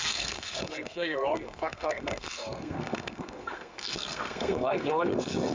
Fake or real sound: fake